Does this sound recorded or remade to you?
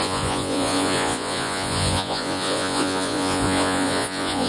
remade